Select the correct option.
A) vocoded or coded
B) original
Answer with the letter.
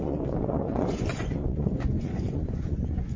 A